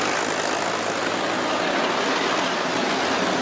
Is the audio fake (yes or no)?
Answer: no